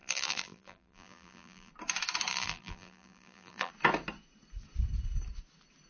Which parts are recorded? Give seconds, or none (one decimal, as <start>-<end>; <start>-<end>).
1.7-2.3; 3.7-5.9